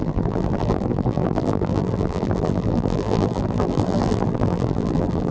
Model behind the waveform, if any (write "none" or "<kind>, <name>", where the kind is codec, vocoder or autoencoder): vocoder, BigVGAN v2